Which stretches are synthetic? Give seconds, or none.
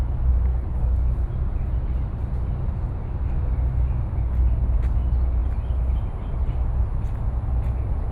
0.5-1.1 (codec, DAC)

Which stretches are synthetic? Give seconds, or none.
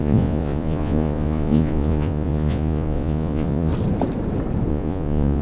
0.0-3.7 (vocoder, Vocos); 4.7-5.4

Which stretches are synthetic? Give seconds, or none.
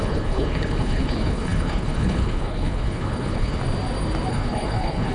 0.0-3.6 (codec, HILCodec); 4.3-5.1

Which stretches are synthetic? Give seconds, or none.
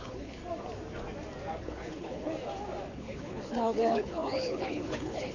0.0-0.4 (codec, HILCodec); 1.6-2.3; 2.9-5.3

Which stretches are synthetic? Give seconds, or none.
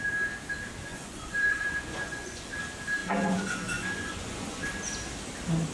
0.9-2.5 (vocoder, Vocos); 3.0-4.6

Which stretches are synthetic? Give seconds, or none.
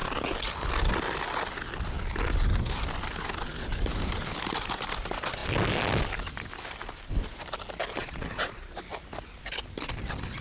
8.0-8.8 (vocoder, Vocos)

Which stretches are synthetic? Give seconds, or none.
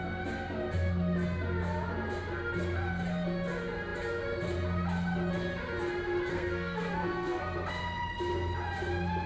6.3-7.4 (codec, SNAC)